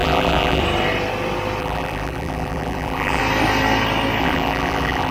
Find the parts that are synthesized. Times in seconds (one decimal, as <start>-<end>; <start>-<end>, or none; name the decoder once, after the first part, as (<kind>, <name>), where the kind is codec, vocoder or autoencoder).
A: 0.0-0.6 (vocoder, BigVGAN v2); 1.6-3.2; 4.2-5.1